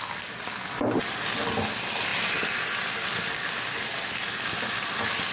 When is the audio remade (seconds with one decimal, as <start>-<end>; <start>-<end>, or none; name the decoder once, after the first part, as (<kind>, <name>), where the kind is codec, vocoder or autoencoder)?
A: none